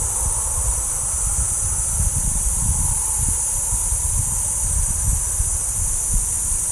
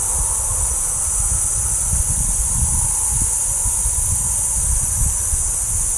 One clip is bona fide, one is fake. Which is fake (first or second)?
second